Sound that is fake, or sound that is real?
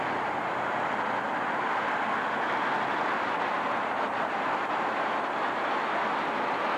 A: real